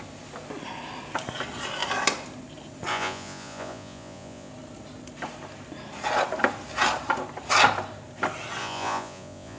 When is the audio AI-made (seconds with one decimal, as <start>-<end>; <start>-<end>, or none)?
2.9-4.5; 8.6-9.6